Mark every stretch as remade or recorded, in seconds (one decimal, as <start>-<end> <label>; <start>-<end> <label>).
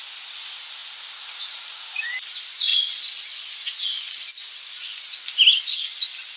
0.0-6.4 recorded